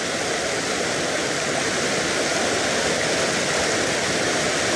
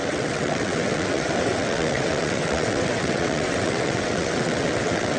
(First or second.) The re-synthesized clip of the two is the second